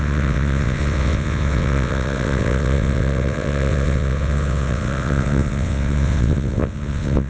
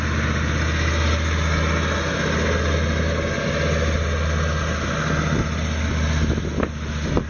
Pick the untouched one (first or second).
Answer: second